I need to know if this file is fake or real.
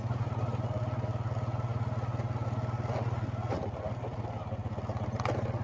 real